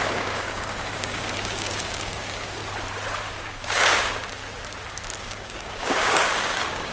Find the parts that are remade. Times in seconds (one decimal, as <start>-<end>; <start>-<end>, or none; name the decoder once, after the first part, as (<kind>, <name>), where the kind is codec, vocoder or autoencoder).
0.0-2.6 (codec, DAC); 3.4-4.4; 5.2-6.9